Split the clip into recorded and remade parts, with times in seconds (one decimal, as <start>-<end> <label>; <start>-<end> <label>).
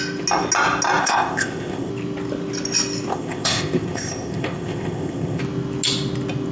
0.0-1.0 recorded; 1.0-1.9 remade; 1.9-3.1 recorded; 3.1-5.4 remade; 5.4-6.5 recorded